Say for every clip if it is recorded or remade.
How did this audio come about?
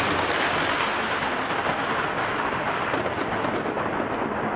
recorded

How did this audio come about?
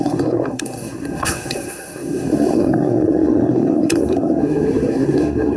remade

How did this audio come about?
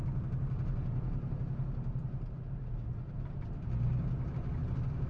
recorded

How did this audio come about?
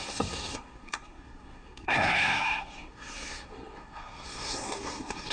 remade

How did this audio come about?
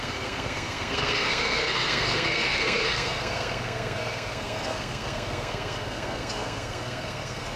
remade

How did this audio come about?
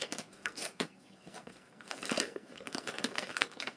remade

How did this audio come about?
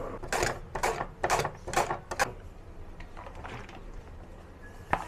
recorded